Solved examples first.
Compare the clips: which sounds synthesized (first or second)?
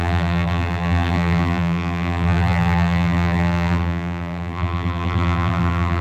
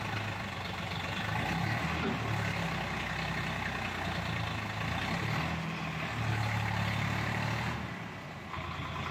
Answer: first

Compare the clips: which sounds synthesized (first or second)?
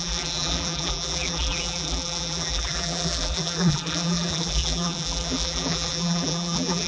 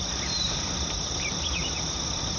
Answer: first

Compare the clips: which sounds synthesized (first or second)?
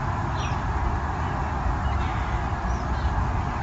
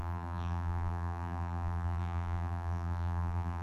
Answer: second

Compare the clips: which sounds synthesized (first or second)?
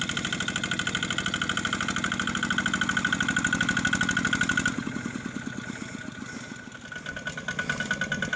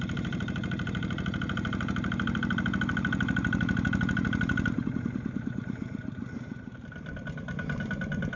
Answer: second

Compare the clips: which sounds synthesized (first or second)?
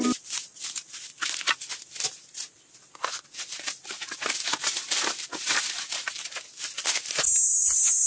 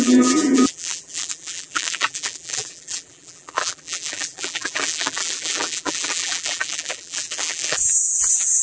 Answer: second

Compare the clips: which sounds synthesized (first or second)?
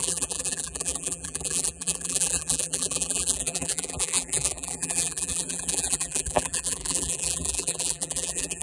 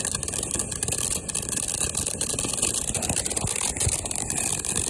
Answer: first